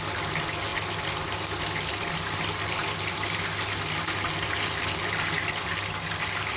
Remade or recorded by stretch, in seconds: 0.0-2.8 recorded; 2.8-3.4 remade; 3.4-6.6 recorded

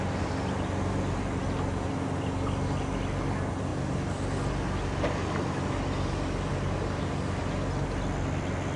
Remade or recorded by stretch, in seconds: 0.0-8.8 recorded

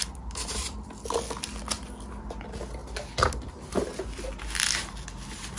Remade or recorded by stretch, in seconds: 0.0-5.6 recorded

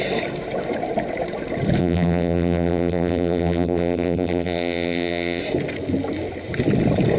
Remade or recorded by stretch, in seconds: 0.0-1.8 recorded; 1.8-5.4 remade; 5.4-7.2 recorded

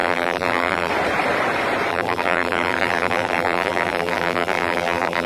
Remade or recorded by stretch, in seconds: 0.0-0.9 remade; 0.9-1.9 recorded; 1.9-5.3 remade